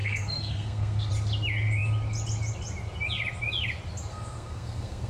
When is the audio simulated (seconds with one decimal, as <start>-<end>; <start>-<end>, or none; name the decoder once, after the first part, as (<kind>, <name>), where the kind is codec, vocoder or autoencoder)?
0.0-1.1 (codec, SNAC); 4.1-5.1

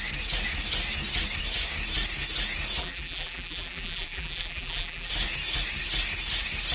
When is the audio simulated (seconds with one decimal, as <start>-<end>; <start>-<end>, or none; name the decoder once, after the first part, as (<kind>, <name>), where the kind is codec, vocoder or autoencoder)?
2.8-5.1 (vocoder, BigVGAN v2)

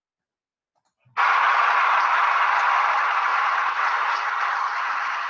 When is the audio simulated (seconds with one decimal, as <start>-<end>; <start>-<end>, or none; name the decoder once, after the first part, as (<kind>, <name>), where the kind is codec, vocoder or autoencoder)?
3.3-3.9 (vocoder, WaveNeXt)

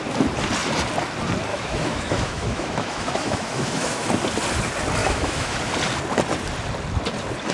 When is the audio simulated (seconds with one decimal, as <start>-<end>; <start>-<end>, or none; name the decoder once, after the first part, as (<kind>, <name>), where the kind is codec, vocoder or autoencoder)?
1.5-4.1 (autoencoder, DAC-VAE); 5.0-5.6

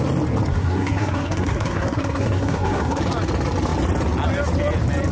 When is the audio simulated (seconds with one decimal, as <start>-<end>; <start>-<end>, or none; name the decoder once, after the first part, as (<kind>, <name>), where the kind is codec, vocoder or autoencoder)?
0.5-3.0 (codec, SNAC)

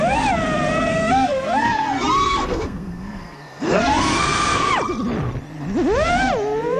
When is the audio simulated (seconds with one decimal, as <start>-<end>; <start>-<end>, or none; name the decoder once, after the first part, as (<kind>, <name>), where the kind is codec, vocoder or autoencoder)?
0.9-4.7 (codec, SNAC)

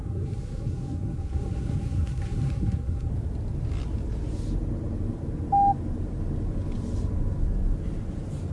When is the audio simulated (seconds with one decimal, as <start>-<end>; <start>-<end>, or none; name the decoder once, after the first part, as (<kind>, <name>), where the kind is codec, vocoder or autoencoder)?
0.0-3.1 (codec, SNAC)